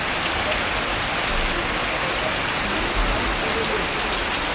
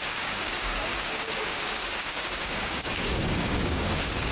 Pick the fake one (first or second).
second